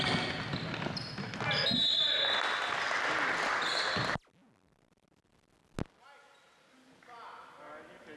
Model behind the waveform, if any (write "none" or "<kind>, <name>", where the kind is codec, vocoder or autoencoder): none